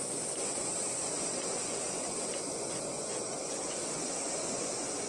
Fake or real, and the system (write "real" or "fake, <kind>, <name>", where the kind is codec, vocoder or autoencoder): fake, vocoder, Vocos